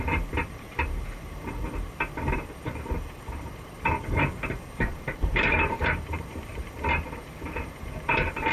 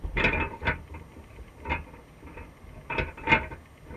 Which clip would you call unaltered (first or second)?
second